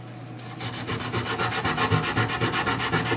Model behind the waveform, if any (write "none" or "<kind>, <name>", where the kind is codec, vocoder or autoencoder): none